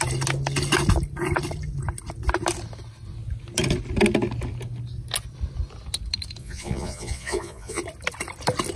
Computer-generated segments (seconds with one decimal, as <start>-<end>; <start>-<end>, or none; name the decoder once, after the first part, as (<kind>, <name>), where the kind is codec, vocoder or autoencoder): 6.4-7.8 (vocoder, Vocos)